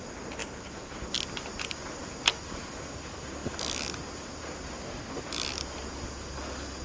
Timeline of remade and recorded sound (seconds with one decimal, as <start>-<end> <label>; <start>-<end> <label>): 0.0-6.8 recorded